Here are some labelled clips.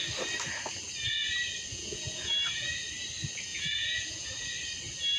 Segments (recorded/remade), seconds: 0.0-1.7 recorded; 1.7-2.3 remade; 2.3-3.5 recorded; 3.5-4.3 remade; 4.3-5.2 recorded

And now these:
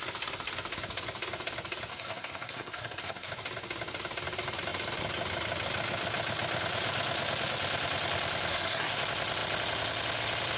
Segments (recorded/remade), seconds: 0.0-1.9 recorded; 1.9-3.3 remade; 3.3-8.5 recorded; 8.5-9.0 remade; 9.0-10.6 recorded